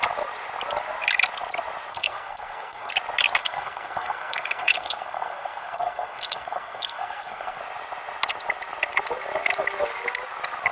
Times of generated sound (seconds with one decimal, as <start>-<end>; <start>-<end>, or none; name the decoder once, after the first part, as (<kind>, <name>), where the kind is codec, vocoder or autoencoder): 1.9-2.9 (codec, SNAC); 3.4-7.6